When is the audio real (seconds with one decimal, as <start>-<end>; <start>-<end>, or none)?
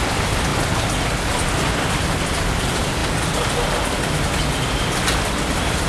0.0-5.9